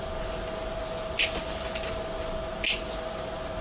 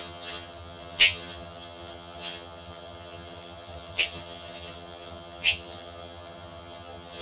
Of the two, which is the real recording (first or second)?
first